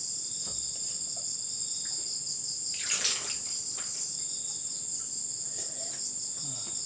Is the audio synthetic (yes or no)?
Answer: no